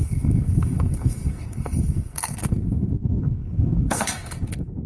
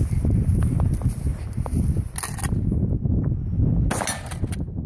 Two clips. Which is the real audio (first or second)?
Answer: second